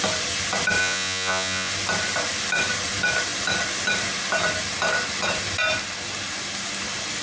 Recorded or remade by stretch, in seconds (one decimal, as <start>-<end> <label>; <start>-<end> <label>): 0.0-0.8 recorded; 0.8-1.7 remade; 1.7-7.2 recorded